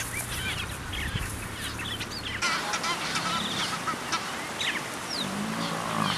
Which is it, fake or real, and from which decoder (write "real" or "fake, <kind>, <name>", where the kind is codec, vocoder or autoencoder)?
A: real